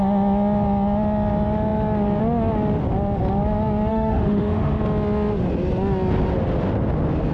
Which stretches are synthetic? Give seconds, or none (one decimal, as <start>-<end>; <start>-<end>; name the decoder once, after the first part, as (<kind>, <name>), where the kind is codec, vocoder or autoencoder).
3.9-4.8 (autoencoder, DAC-VAE)